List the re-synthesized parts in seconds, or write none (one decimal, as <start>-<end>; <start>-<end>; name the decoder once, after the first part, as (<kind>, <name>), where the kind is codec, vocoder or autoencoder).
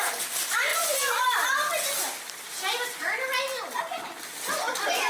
none